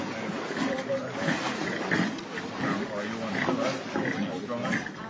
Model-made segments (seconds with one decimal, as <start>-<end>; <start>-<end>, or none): none